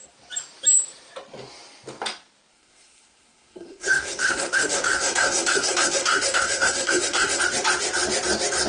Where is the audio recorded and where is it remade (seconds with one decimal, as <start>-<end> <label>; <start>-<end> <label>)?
0.0-2.5 recorded; 2.5-7.4 remade; 7.4-8.7 recorded